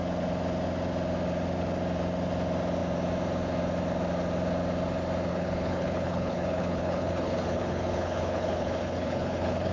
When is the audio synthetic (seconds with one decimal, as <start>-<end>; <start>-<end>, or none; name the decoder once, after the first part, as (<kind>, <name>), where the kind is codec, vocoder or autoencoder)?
5.3-9.7 (codec, HILCodec)